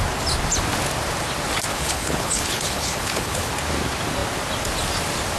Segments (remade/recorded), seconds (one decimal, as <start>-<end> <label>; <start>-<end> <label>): 0.0-1.7 recorded; 1.7-3.5 remade; 3.5-5.4 recorded